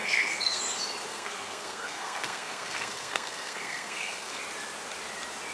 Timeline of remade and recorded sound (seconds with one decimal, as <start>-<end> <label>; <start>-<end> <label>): 0.0-0.6 remade; 0.6-1.1 recorded; 1.1-4.4 remade; 4.4-5.5 recorded